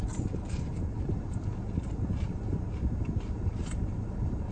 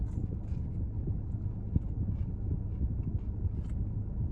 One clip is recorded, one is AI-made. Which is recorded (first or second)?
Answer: second